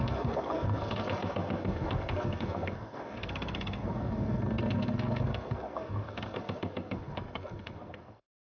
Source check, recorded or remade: remade